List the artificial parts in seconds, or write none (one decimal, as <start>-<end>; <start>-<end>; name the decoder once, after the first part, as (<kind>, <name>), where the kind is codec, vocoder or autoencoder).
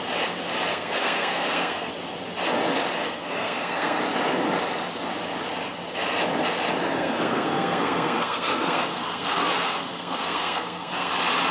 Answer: 0.7-1.9 (codec, SNAC); 3.0-4.0; 6.9-11.1